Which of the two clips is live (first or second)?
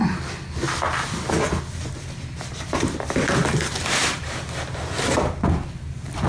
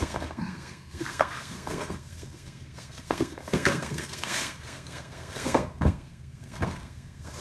first